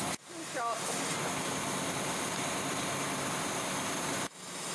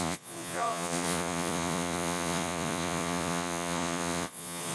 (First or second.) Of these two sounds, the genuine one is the first